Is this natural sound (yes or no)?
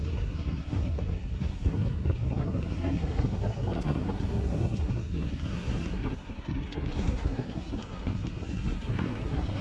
no